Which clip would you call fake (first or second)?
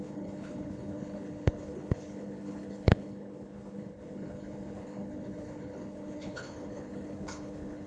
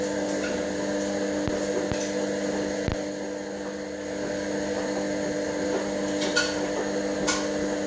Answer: first